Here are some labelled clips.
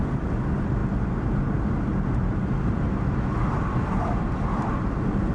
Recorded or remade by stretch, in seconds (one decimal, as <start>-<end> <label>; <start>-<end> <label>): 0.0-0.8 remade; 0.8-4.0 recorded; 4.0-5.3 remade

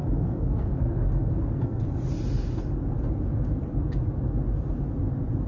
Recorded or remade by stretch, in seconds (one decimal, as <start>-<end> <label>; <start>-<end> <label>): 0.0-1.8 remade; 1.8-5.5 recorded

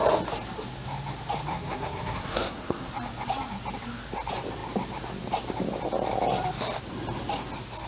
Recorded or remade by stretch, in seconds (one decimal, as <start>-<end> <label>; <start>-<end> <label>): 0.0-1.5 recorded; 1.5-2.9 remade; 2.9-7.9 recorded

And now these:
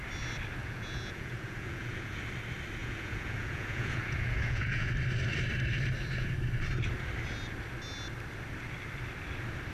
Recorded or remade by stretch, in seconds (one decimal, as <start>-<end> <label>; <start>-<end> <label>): 0.0-0.6 recorded; 0.6-2.2 remade; 2.2-2.8 recorded; 2.8-4.9 remade; 4.9-9.7 recorded

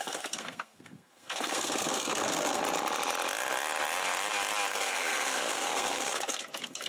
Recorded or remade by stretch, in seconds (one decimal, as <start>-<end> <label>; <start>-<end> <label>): 0.0-2.6 remade; 2.6-4.7 recorded; 4.7-6.9 remade